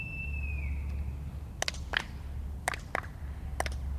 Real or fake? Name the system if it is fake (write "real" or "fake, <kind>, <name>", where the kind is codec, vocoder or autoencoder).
real